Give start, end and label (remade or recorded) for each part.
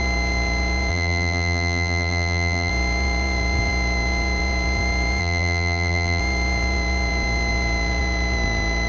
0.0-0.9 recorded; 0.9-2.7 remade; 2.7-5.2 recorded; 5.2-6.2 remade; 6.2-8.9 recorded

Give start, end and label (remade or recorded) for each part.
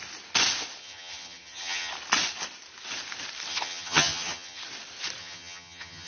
0.0-0.8 recorded; 0.8-1.9 remade; 1.9-3.5 recorded; 3.5-4.6 remade; 4.6-5.2 recorded; 5.2-6.1 remade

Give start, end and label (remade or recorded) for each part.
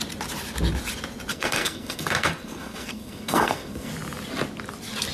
0.0-1.3 recorded; 1.3-3.9 remade; 3.9-5.1 recorded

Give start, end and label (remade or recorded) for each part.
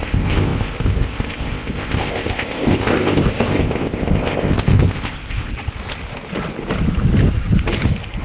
0.0-5.5 remade; 5.5-8.2 recorded